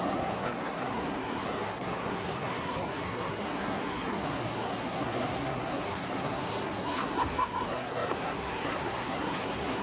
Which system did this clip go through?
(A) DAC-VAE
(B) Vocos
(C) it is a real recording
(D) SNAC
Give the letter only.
D